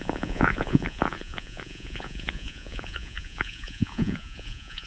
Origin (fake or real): fake